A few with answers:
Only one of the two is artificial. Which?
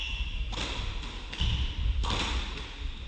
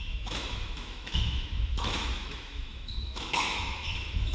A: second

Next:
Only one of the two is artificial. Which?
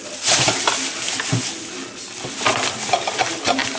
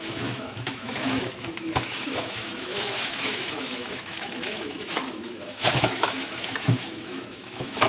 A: second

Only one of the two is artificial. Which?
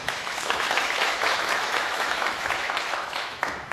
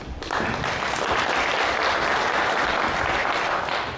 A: first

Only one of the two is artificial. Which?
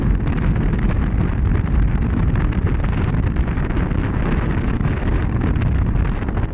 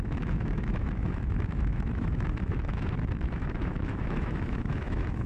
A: second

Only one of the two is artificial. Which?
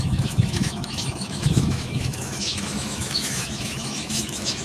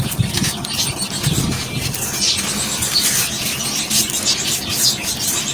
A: first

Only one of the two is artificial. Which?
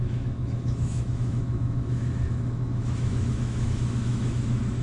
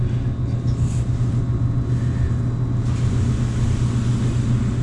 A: first